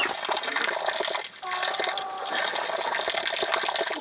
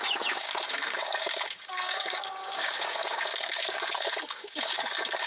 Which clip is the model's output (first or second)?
second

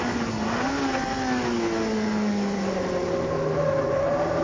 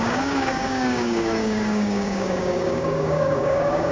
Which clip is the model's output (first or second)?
second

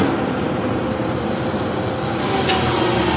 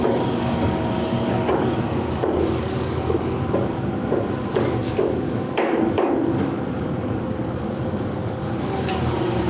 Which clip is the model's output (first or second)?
second